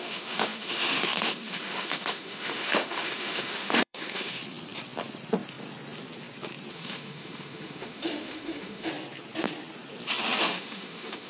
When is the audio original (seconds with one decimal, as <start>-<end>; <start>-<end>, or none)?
4.4-6.7; 8.9-10.4